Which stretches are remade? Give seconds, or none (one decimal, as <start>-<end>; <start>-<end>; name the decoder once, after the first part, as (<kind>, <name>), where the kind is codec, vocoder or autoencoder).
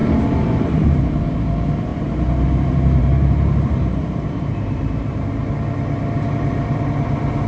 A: 0.0-1.0 (vocoder, BigVGAN v2); 1.9-5.3